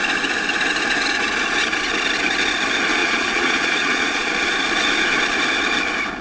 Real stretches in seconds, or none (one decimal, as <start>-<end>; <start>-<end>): 0.0-3.0; 4.3-6.2